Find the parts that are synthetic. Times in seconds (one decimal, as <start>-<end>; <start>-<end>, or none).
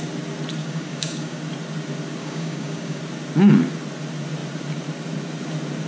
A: 0.6-1.4; 2.2-3.0